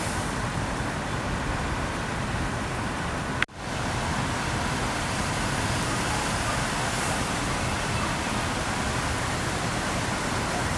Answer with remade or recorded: recorded